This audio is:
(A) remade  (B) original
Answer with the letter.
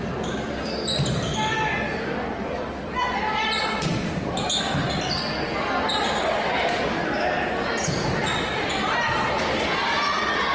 B